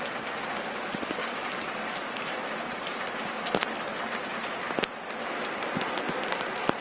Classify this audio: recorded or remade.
recorded